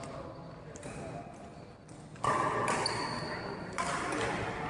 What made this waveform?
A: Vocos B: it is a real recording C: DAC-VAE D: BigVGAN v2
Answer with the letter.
B